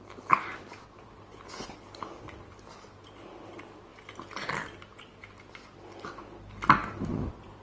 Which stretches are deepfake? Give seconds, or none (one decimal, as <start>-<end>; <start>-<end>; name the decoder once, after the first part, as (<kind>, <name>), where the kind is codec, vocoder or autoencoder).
none